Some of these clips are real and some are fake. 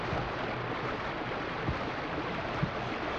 real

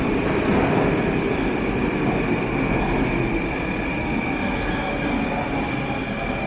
real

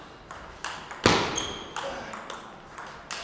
real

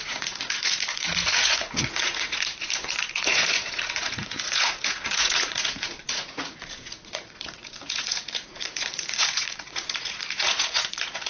fake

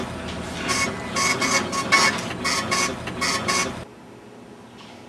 real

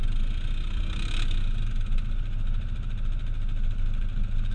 real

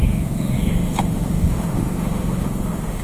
fake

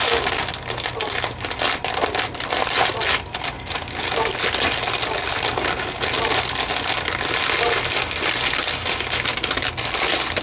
real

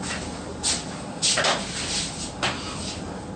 real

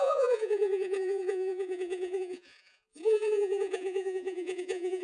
fake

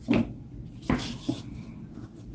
fake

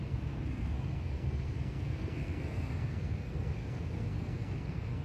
fake